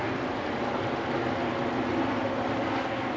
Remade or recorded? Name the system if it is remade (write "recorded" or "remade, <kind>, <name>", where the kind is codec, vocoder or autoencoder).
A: recorded